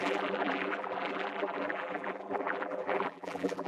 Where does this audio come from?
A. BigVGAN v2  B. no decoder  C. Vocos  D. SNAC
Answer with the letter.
A